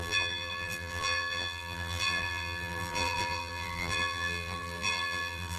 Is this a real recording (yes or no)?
no